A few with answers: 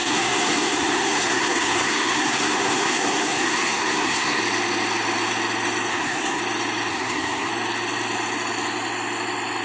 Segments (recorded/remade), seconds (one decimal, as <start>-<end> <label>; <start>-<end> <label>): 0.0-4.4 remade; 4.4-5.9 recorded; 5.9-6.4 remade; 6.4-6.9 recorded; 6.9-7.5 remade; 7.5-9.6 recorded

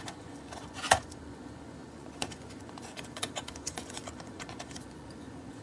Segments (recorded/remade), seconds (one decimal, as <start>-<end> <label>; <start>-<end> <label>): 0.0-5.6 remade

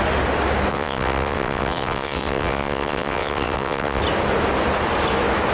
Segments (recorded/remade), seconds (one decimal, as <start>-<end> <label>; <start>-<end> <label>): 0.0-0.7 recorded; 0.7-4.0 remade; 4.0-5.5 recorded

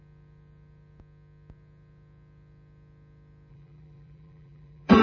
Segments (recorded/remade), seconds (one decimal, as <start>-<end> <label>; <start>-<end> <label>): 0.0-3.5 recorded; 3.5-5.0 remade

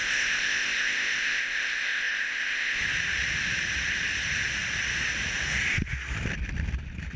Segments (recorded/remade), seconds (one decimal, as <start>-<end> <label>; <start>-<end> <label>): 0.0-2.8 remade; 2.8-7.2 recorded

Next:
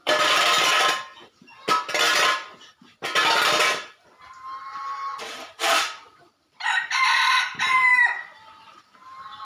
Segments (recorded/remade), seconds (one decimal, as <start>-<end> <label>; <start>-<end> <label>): 0.0-1.1 remade; 1.1-3.0 recorded; 3.0-9.4 remade

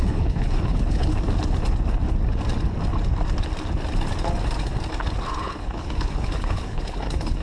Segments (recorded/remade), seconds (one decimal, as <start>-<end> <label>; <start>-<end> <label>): 0.0-1.1 remade; 1.1-5.4 recorded; 5.4-7.4 remade